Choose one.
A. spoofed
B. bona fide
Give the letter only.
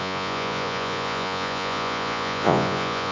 A